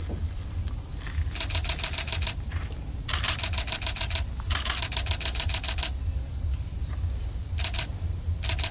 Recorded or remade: recorded